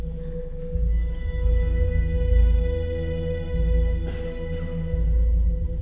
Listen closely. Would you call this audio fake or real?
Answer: real